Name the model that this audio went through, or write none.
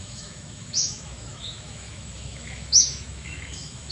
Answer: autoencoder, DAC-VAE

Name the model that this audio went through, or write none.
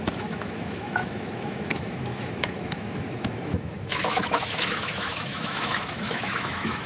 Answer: autoencoder, DAC-VAE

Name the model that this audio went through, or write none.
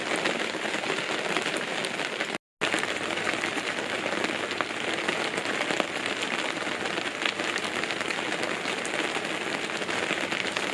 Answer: none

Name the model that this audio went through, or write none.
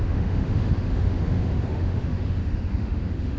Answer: autoencoder, DAC-VAE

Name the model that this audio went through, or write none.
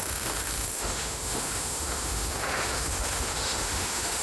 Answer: autoencoder, DAC-VAE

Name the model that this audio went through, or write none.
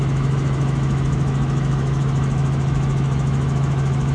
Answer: autoencoder, DAC-VAE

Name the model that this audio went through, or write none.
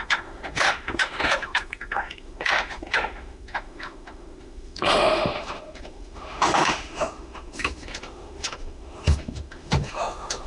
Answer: autoencoder, DAC-VAE